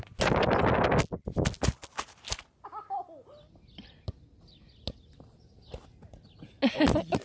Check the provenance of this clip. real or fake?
real